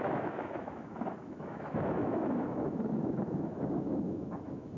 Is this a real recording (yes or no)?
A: no